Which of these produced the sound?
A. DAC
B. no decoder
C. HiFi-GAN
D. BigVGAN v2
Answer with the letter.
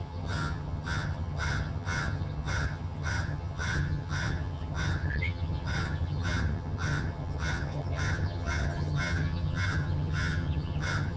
C